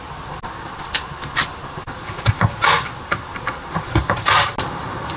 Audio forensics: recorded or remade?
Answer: recorded